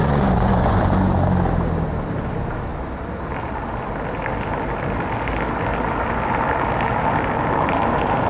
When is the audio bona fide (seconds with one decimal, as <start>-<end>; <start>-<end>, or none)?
0.8-8.3